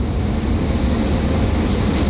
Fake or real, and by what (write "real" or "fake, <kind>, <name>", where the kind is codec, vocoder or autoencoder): real